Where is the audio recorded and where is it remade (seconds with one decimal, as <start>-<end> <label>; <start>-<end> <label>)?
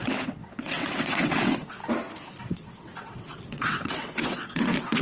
0.0-1.8 remade; 1.8-2.4 recorded; 2.4-5.0 remade